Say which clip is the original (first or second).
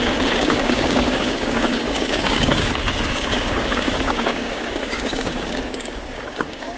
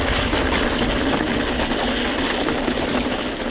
second